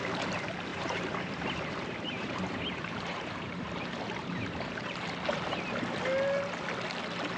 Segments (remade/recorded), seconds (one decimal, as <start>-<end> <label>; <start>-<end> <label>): 0.0-0.7 recorded; 0.7-3.7 remade; 3.7-4.2 recorded; 4.2-5.0 remade; 5.0-7.4 recorded